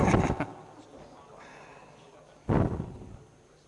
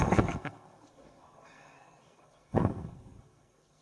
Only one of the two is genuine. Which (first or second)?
first